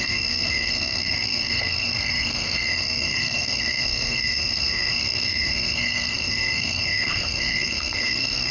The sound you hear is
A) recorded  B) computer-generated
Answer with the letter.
B